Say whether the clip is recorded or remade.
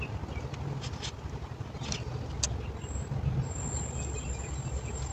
recorded